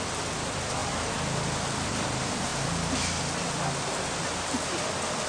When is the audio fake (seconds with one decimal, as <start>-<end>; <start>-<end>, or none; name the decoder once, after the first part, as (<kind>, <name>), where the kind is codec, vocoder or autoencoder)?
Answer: none